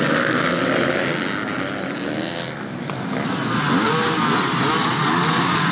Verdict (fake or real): real